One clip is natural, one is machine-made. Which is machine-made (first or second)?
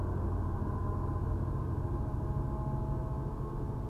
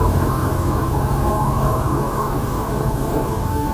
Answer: second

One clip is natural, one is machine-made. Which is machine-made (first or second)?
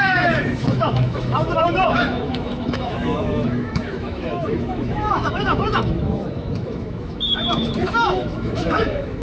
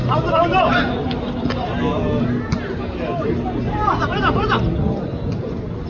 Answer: first